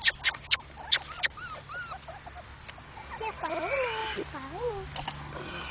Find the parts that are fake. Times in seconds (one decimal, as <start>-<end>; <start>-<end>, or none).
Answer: none